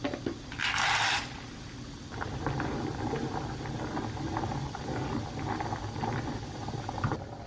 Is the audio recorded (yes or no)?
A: yes